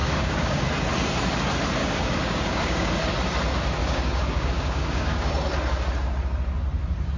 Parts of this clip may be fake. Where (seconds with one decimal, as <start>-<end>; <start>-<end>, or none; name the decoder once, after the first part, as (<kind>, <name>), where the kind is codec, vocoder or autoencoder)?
0.0-0.6 (codec, DAC); 1.8-2.9; 3.8-5.3